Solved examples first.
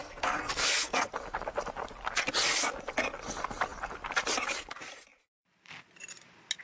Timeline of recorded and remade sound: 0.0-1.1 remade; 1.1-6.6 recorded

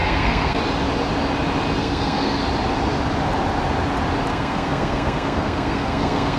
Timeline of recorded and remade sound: 0.0-0.6 remade; 0.6-1.8 recorded; 1.8-2.4 remade; 2.4-4.3 recorded; 4.3-6.4 remade

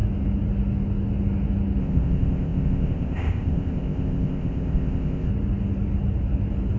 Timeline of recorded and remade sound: 0.0-1.8 recorded; 1.8-5.3 remade; 5.3-6.8 recorded

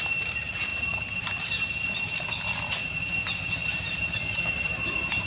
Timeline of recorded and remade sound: 0.0-5.3 recorded